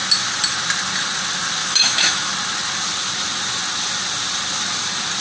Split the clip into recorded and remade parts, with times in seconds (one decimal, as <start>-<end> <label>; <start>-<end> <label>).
0.0-1.6 recorded; 1.6-2.3 remade; 2.3-5.2 recorded